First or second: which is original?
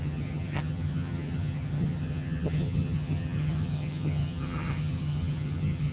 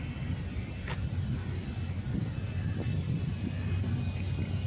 second